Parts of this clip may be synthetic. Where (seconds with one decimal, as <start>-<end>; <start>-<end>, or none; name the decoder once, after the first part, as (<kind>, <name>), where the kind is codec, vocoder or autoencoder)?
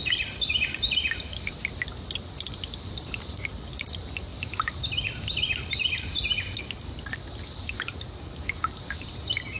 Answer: none